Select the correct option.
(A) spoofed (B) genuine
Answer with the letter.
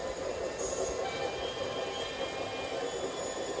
B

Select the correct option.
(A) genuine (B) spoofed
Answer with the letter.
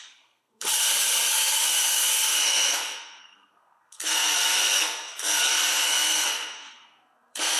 B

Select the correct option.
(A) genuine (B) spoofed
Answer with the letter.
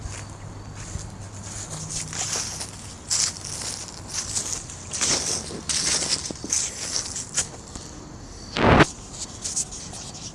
A